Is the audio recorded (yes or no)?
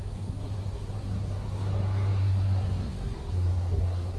no